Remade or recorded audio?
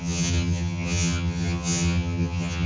remade